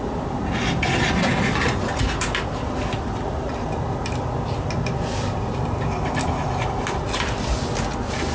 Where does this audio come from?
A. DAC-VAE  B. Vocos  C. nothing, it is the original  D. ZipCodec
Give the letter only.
C